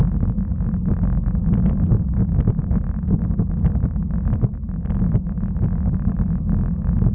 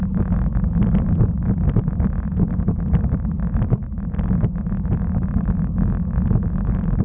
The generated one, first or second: second